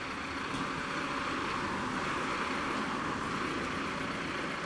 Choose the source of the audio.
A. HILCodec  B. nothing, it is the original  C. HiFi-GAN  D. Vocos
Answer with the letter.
B